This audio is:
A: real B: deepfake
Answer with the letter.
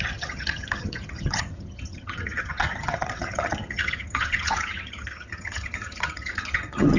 B